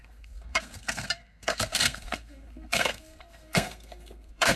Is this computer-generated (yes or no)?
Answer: yes